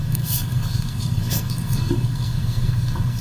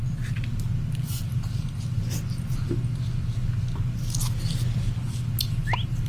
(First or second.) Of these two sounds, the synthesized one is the first